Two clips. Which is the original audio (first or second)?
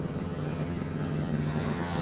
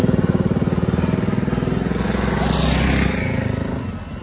second